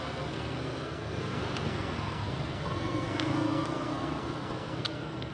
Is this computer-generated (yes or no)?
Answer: yes